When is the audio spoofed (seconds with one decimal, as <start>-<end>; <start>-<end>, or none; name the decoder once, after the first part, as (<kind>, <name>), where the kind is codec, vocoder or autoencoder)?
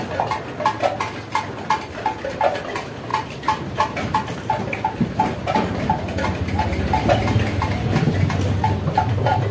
none